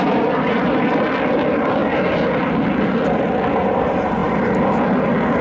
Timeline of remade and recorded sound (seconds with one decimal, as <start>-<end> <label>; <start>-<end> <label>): 0.0-4.2 remade; 4.2-5.4 recorded

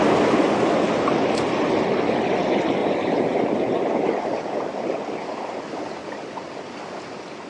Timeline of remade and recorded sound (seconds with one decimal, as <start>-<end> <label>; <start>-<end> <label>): 0.0-2.8 recorded; 2.8-3.5 remade; 3.5-6.0 recorded; 6.0-7.0 remade; 7.0-7.5 recorded

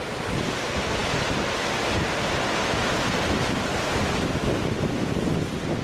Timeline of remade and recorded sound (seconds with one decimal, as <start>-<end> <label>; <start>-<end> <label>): 0.0-5.8 recorded

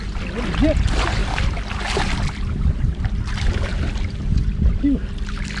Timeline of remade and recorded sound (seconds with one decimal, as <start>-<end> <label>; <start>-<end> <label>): 0.0-1.2 recorded; 1.2-3.1 remade; 3.1-5.6 recorded

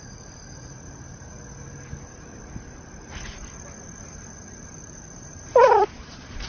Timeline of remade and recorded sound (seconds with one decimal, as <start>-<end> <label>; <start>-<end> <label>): 0.0-2.4 remade; 2.4-4.0 recorded; 4.0-6.5 remade

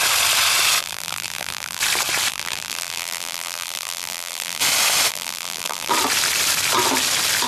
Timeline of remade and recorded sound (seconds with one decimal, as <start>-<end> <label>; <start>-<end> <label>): 0.0-0.8 recorded; 0.8-1.8 remade; 1.8-2.3 recorded; 2.3-4.6 remade; 4.6-5.1 recorded; 5.1-5.9 remade; 5.9-7.5 recorded